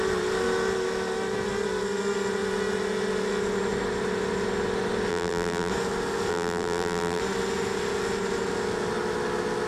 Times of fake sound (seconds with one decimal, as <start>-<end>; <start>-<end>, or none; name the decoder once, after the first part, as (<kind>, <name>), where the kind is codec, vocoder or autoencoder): 5.1-5.7 (vocoder, BigVGAN v2); 6.3-7.2